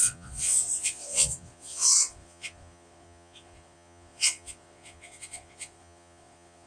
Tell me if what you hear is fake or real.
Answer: fake